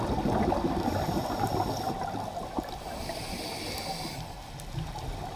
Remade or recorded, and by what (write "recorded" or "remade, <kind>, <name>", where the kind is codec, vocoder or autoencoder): recorded